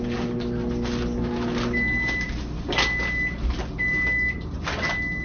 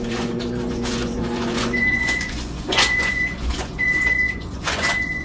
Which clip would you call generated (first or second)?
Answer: second